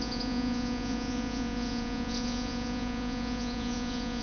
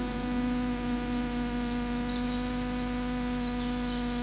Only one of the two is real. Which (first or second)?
second